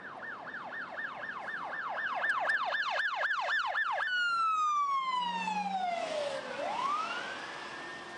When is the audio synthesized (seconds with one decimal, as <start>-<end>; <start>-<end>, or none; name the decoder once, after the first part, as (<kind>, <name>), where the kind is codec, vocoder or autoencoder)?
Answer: none